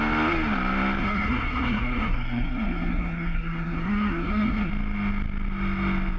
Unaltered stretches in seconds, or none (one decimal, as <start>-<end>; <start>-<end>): 0.0-1.0; 4.7-6.2